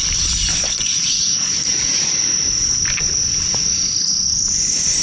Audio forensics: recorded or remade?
remade